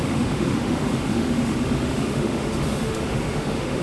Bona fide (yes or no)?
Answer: no